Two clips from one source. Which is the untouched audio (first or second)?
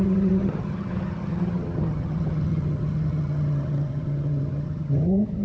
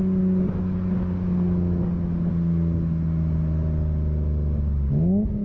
second